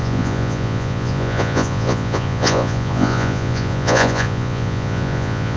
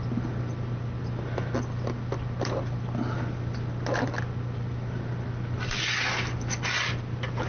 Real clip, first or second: second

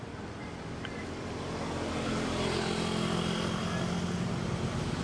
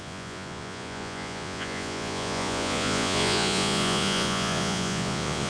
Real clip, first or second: first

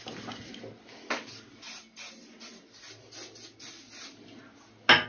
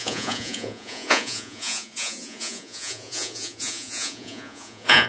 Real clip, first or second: first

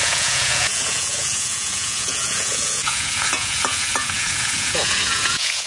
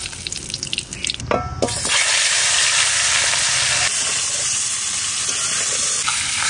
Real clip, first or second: second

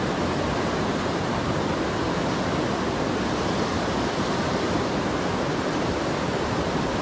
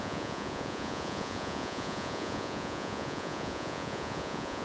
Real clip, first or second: first